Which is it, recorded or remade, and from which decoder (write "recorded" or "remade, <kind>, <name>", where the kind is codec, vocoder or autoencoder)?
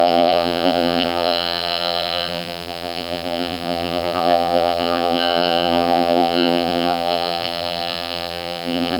remade, vocoder, BigVGAN v2